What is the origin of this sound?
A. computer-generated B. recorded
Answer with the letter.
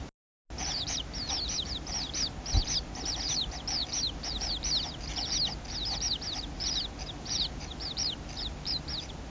B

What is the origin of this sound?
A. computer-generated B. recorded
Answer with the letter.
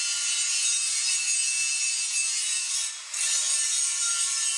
B